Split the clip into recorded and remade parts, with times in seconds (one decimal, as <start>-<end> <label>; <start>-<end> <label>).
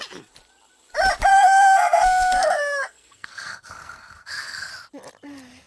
0.0-1.3 recorded; 1.3-4.7 remade; 4.7-5.7 recorded